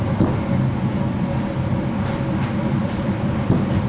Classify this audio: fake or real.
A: fake